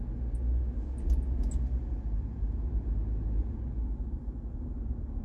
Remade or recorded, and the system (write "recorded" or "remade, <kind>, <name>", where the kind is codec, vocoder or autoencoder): recorded